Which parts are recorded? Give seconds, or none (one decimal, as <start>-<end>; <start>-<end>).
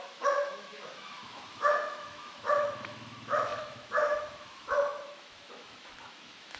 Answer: none